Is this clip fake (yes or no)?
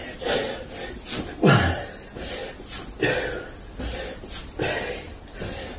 no